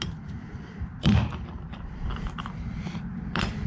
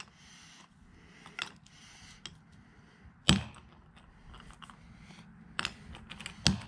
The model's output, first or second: first